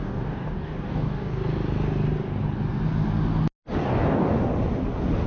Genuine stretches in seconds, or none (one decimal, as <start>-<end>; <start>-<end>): 1.4-3.8; 4.3-5.3